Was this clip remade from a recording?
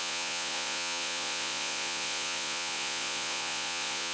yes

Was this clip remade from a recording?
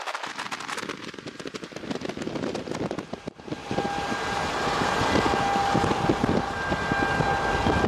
no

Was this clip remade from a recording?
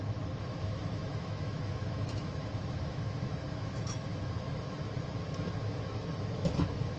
yes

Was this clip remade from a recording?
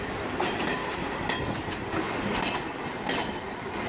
no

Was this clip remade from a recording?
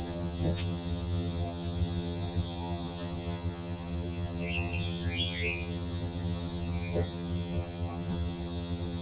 yes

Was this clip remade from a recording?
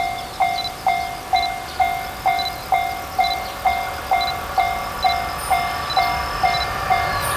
no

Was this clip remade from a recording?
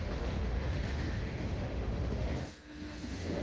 yes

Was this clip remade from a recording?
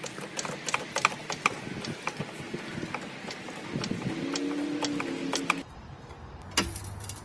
no